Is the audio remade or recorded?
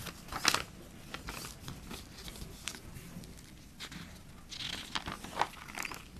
recorded